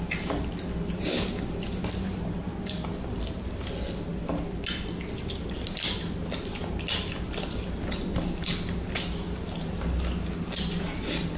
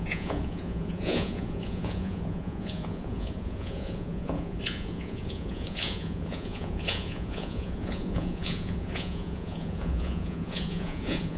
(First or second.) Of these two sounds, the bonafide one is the first